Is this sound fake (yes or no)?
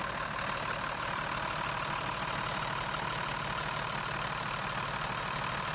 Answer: no